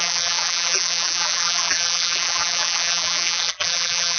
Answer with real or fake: fake